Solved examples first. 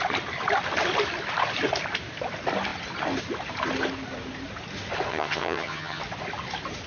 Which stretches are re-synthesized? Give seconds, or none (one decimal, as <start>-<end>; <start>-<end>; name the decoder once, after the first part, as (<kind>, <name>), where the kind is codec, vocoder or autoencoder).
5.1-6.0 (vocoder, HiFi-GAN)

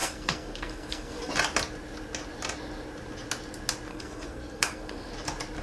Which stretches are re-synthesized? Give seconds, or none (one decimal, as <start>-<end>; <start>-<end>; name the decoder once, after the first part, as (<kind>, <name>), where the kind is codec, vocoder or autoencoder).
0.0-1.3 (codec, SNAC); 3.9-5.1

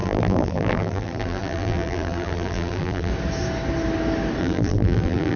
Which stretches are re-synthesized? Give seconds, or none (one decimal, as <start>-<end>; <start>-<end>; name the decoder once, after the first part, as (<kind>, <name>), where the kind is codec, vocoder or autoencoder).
0.0-3.1 (vocoder, BigVGAN v2); 4.4-5.4

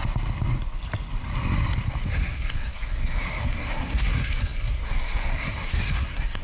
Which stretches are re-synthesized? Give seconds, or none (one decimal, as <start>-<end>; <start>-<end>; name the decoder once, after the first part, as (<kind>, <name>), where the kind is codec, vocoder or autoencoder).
2.1-6.4 (codec, SNAC)

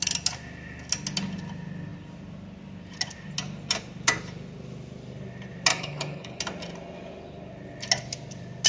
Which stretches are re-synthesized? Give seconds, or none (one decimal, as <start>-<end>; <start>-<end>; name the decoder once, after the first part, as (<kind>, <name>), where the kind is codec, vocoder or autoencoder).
5.7-6.4 (codec, DAC)

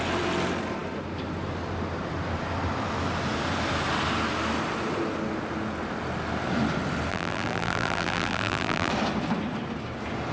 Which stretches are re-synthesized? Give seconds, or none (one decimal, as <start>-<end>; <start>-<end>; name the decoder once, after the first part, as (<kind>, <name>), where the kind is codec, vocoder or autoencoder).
7.1-8.9 (vocoder, BigVGAN v2)